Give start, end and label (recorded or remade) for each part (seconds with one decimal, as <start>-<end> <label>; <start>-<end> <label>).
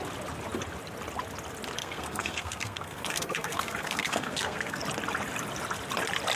0.0-1.8 recorded; 1.8-4.8 remade; 4.8-6.4 recorded